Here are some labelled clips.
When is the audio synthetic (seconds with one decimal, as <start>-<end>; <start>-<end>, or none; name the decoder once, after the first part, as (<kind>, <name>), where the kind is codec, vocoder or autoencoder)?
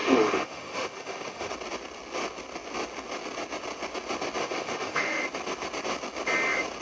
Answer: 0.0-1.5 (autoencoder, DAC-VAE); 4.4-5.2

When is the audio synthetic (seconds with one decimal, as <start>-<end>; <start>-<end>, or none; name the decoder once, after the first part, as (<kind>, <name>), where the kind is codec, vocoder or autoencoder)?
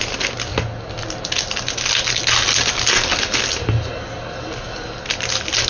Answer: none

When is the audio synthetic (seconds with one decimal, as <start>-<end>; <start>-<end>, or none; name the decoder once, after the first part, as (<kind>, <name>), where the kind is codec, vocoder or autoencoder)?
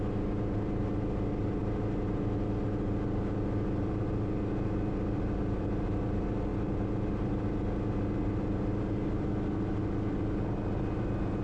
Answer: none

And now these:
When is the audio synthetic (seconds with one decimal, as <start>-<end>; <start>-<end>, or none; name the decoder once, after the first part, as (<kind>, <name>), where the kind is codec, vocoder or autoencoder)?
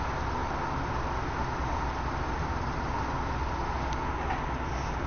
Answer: none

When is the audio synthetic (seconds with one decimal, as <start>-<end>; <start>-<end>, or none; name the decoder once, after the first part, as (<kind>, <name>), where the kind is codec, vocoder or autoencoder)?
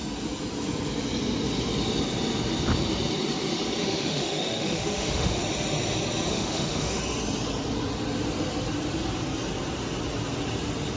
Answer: 3.8-5.4 (autoencoder, DAC-VAE); 6.3-7.0